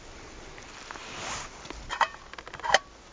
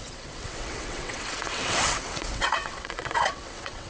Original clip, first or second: first